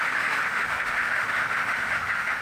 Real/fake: fake